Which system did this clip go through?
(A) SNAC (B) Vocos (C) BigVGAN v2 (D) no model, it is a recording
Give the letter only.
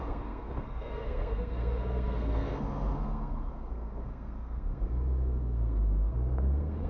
A